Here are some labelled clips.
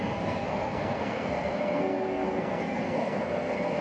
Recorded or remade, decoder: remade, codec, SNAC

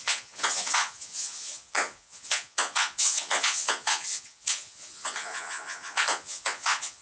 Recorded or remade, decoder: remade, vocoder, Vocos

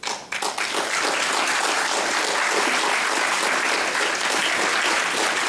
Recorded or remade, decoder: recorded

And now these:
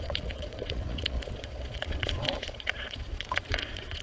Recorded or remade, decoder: remade, vocoder, Vocos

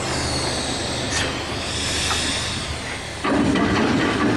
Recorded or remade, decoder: recorded